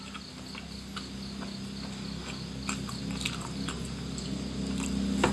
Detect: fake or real real